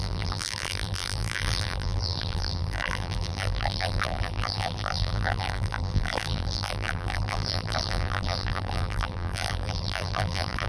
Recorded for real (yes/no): no